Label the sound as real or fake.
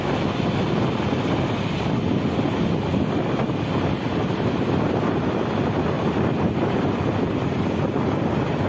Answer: real